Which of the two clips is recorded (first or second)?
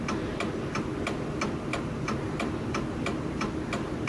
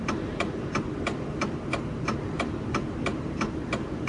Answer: first